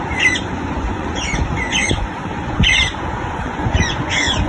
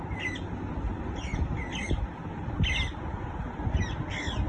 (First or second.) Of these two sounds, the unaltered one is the second